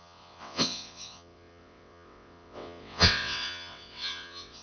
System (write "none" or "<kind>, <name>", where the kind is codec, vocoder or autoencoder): vocoder, WaveNeXt